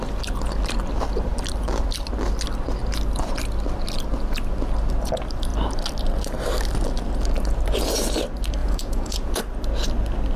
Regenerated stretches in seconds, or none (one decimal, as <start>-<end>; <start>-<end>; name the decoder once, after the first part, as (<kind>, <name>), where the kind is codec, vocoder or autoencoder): 8.6-9.4 (vocoder, Vocos)